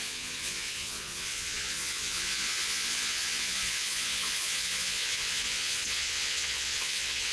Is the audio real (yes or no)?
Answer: no